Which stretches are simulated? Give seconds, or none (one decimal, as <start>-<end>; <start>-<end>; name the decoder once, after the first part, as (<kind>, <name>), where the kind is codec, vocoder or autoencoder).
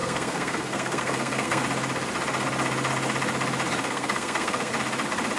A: 0.0-1.6 (codec, SNAC); 3.8-4.7